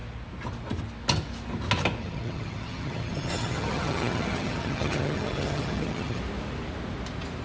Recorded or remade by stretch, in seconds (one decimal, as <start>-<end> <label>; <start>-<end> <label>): 0.0-2.0 recorded; 2.0-6.2 remade; 6.2-7.4 recorded